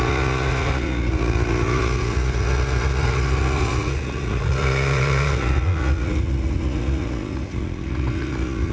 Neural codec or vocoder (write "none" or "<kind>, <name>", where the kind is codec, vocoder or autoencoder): vocoder, Vocos